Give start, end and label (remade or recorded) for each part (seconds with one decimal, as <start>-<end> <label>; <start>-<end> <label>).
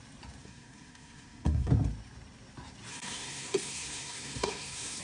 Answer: 0.0-0.4 recorded; 0.4-1.7 remade; 1.7-2.9 recorded; 2.9-5.0 remade